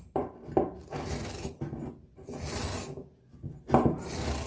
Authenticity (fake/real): real